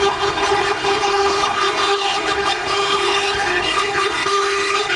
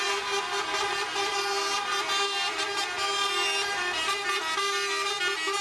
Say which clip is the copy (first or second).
first